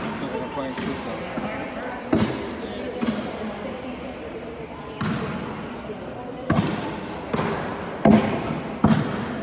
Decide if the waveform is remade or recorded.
recorded